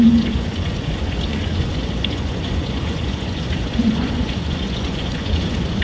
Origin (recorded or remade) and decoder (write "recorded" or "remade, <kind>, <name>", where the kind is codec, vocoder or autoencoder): remade, vocoder, Vocos